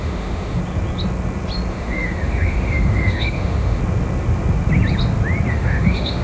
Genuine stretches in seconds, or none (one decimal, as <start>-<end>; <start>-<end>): 0.6-1.7; 3.8-5.5